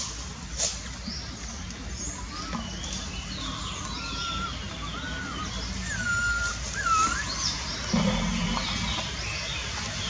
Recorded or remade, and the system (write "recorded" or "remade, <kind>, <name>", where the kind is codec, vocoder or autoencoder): recorded